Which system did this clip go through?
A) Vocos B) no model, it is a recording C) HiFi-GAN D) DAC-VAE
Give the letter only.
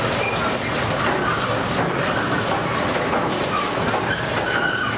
B